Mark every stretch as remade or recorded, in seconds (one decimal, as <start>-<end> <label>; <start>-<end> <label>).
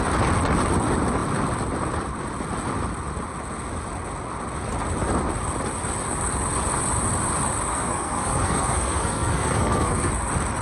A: 0.0-7.7 recorded; 7.7-10.1 remade; 10.1-10.6 recorded